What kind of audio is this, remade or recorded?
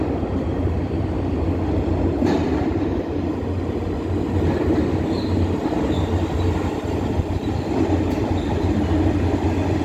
recorded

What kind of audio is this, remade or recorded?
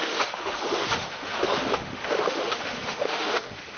remade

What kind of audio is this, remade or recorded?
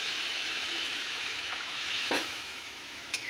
remade